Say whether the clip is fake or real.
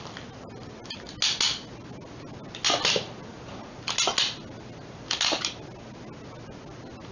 real